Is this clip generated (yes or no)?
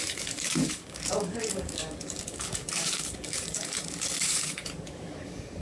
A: yes